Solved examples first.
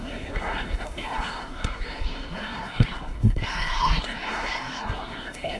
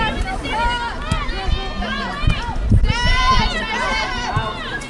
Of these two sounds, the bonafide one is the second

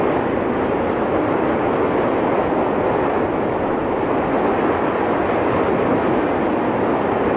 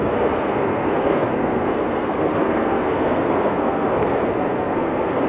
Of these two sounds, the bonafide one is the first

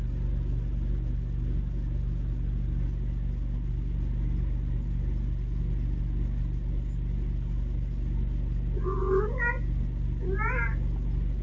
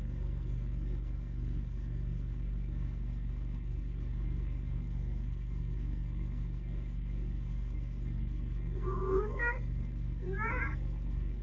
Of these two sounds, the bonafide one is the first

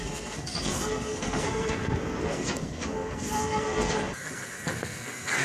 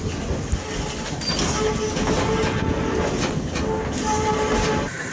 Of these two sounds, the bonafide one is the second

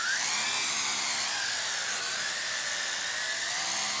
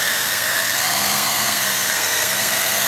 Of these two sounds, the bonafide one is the first